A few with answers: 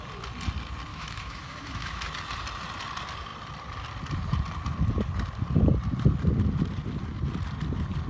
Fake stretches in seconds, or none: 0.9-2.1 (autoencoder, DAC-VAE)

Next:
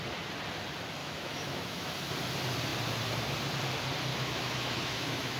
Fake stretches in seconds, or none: 1.0-1.9 (autoencoder, DAC-VAE); 4.1-5.4

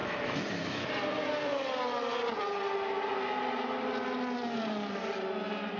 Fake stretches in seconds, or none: 0.0-0.9 (autoencoder, DAC-VAE)

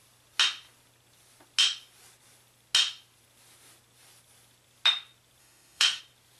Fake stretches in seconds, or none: 5.4-6.0 (autoencoder, DAC-VAE)

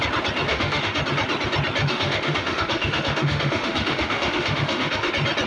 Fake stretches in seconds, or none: 0.5-1.0 (autoencoder, DAC-VAE); 1.8-5.1